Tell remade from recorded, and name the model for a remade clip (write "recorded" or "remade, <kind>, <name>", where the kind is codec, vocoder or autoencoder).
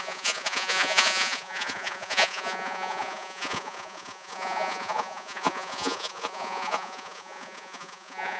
remade, vocoder, Vocos